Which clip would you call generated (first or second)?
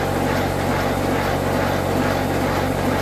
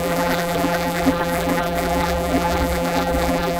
second